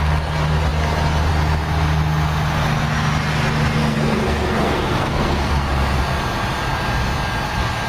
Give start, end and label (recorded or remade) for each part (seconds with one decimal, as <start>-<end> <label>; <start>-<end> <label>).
0.0-3.8 recorded; 3.8-6.0 remade; 6.0-7.9 recorded